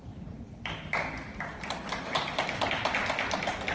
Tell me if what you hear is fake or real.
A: real